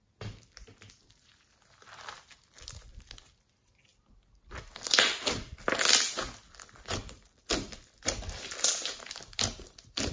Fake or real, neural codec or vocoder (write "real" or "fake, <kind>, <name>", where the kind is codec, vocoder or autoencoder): real